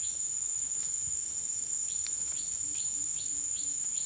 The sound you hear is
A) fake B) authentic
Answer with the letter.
A